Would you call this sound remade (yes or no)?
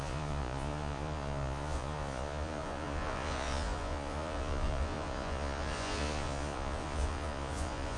yes